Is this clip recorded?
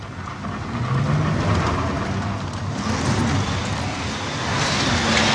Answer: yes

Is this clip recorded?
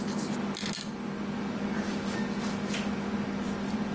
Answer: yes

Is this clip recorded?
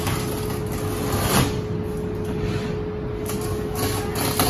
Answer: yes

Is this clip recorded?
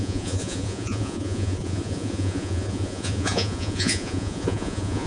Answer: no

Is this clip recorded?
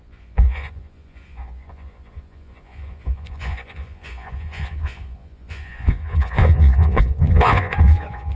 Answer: no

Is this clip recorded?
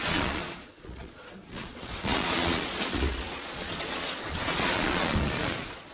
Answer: no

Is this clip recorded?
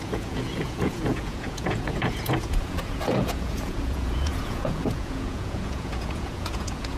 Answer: no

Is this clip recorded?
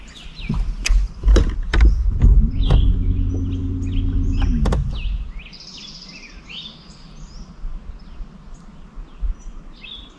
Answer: yes